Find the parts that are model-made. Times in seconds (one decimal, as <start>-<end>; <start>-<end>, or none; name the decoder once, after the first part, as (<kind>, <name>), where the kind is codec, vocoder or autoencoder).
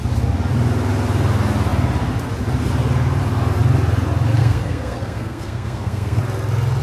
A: 4.4-6.2 (codec, SNAC)